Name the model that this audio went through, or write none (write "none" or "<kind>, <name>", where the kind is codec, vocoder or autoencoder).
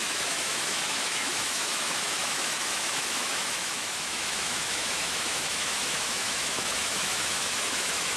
autoencoder, DAC-VAE